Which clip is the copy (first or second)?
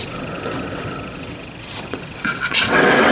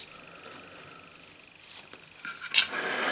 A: first